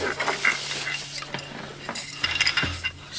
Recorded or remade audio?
recorded